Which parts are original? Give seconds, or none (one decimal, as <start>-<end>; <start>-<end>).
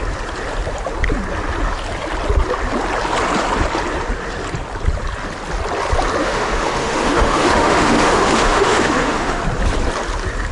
0.0-6.2; 9.4-10.5